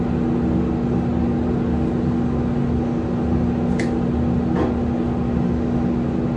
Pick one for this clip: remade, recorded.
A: recorded